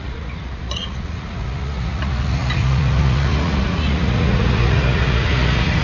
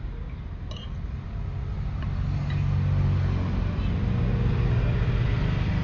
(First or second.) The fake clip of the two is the first